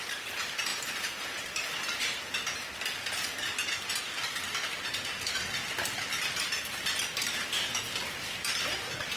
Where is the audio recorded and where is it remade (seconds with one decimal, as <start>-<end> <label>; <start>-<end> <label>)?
0.0-9.2 recorded